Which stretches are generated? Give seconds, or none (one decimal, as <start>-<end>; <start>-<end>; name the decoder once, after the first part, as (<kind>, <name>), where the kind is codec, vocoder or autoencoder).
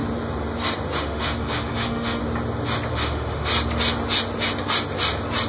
1.0-2.2 (autoencoder, DAC-VAE); 2.9-3.5